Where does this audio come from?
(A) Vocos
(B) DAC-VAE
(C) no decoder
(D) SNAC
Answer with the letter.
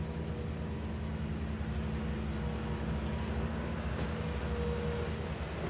C